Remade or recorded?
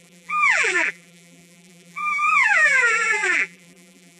remade